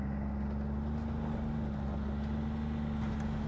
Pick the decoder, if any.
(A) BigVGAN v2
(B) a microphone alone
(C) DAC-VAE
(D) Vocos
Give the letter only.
B